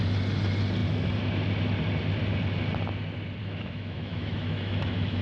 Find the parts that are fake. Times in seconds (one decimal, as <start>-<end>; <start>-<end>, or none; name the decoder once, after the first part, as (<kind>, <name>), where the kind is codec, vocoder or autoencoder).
3.4-5.2 (autoencoder, DAC-VAE)